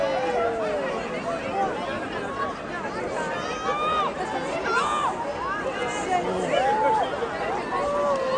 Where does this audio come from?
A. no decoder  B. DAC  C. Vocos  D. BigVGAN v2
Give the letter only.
A